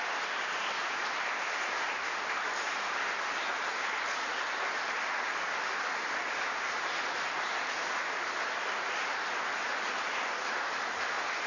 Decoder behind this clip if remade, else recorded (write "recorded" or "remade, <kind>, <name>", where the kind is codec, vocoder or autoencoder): recorded